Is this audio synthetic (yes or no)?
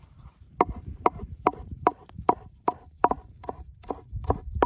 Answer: yes